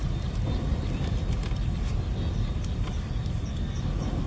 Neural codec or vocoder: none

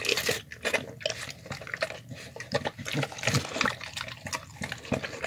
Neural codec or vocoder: none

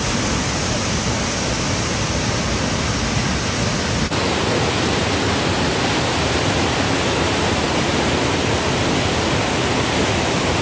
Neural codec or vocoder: none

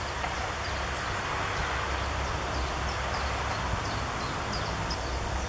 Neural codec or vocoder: none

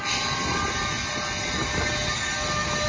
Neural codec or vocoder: none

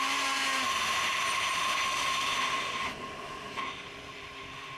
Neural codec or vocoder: none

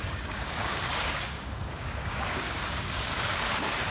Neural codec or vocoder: codec, DAC